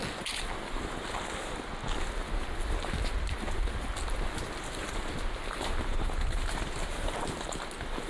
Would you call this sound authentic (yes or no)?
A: yes